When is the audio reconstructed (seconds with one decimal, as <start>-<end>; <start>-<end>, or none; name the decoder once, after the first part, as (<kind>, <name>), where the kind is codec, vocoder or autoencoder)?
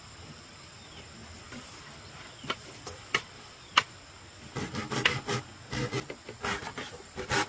0.0-1.2 (vocoder, BigVGAN v2); 1.9-3.7; 6.9-7.5